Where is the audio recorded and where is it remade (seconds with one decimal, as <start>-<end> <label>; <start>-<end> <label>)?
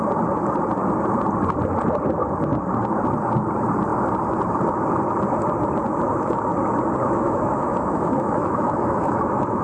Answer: 0.0-7.0 recorded; 7.0-9.6 remade